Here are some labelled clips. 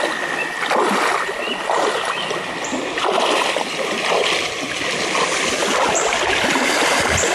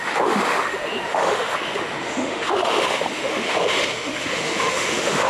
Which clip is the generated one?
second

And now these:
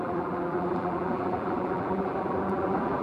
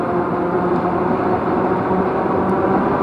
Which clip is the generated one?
first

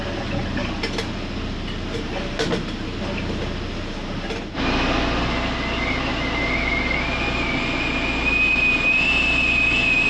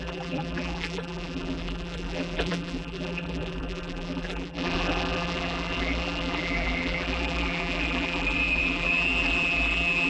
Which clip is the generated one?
second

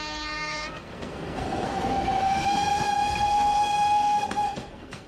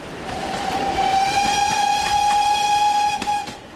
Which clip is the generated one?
first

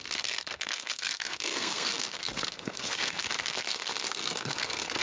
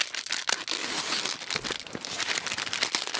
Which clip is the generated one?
first